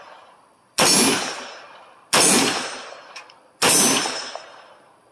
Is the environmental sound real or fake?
real